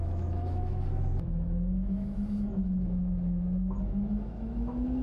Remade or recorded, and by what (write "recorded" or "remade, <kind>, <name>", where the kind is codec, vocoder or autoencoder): remade, autoencoder, DAC-VAE